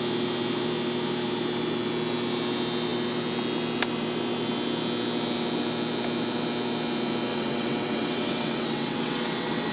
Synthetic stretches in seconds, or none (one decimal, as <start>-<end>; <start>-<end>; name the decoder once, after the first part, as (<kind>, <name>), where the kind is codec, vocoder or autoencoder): 7.3-9.7 (vocoder, WaveNeXt)